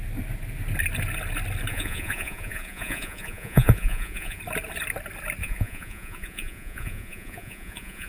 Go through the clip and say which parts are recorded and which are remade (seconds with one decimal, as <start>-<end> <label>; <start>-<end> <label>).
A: 0.0-1.7 recorded; 1.7-4.4 remade; 4.4-5.4 recorded; 5.4-8.1 remade